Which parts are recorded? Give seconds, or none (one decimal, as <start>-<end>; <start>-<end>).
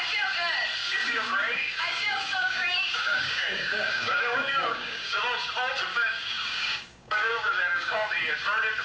0.0-0.8; 5.2-5.9; 8.1-8.8